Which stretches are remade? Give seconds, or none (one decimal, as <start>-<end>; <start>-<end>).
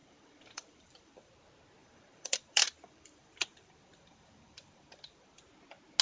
0.0-1.3; 1.8-5.4